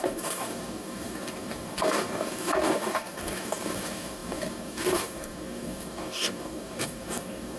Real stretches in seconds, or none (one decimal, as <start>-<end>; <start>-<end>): none